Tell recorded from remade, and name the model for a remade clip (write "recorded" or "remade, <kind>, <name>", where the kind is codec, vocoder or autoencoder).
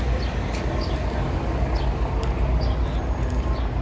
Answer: recorded